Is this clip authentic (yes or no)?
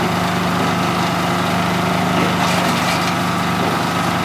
yes